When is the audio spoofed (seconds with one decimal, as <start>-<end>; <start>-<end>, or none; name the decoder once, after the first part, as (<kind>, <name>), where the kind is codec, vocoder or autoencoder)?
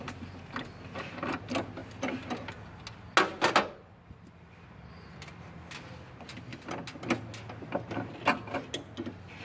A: none